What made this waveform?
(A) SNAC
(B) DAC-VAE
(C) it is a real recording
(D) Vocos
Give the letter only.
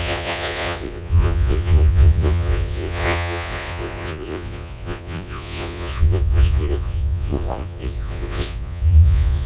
D